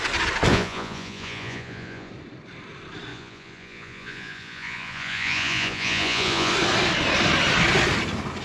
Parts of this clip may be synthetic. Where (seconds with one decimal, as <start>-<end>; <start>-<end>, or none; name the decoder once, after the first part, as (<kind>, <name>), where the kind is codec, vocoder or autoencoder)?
0.5-2.1 (vocoder, Vocos); 3.1-6.5